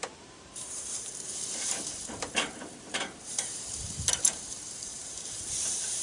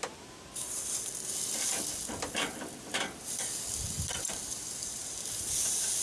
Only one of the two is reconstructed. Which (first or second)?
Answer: first